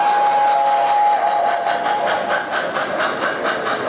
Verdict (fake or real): real